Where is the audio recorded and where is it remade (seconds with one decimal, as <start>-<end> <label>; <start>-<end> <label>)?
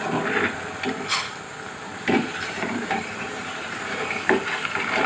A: 0.0-1.9 recorded; 1.9-4.5 remade; 4.5-5.1 recorded